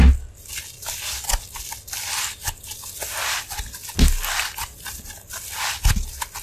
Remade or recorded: recorded